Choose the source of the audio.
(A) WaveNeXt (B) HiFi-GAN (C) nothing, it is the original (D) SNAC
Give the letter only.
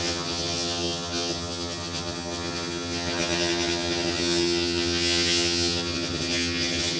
B